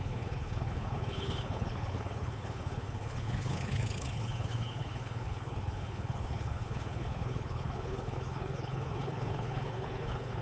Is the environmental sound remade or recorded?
remade